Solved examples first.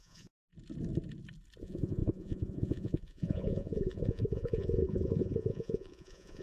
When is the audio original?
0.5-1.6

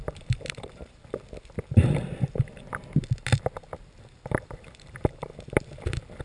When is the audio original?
1.0-4.1; 5.3-6.2

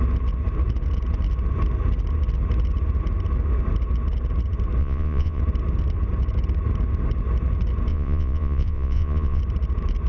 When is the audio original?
0.0-4.8; 5.4-7.9; 9.4-10.1